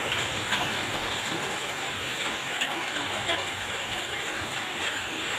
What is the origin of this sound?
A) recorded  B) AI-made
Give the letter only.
B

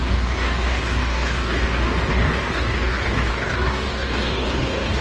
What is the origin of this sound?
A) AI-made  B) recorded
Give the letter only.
A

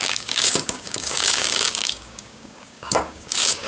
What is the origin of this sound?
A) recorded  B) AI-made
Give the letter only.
B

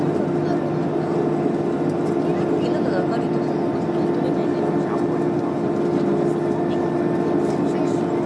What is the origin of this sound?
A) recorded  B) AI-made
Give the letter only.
A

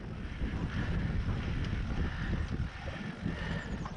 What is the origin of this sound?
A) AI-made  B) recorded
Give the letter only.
B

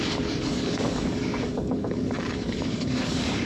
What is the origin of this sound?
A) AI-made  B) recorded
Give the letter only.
A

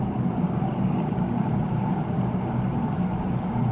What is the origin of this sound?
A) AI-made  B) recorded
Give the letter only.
A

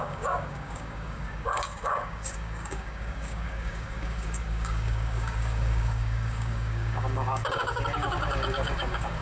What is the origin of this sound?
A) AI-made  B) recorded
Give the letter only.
A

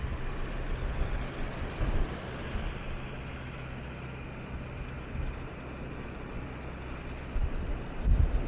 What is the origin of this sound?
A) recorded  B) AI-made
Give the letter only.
A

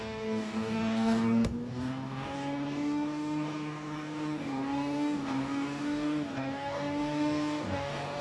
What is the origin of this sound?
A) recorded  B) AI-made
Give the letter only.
B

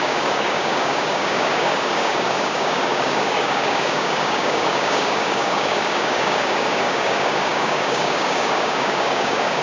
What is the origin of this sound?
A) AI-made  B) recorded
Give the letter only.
A